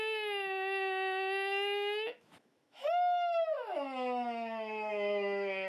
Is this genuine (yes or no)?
no